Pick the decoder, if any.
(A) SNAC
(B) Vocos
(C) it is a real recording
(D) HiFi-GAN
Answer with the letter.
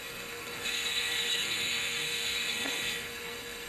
A